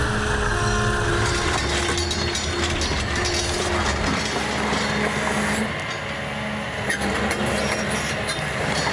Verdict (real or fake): real